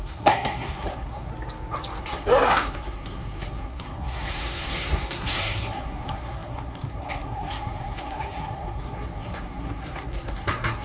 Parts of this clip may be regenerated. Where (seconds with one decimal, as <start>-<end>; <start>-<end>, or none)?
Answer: 0.0-1.3; 2.0-10.8

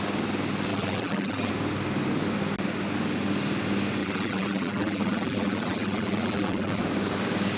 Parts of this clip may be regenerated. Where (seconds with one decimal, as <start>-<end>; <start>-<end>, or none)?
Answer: 0.7-1.5; 4.0-6.8

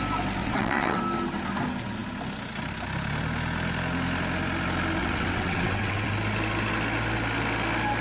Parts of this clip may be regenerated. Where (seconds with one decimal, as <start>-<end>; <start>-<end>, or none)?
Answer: 0.4-1.0; 5.0-6.1

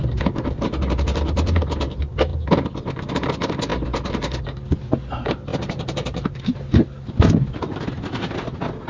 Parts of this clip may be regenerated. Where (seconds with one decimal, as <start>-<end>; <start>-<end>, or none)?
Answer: none